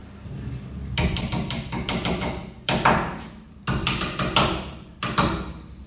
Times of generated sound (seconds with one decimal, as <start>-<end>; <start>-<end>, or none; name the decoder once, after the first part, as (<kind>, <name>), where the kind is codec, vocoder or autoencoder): none